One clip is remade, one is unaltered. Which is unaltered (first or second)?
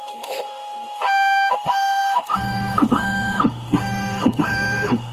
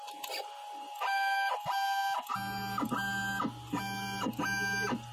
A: second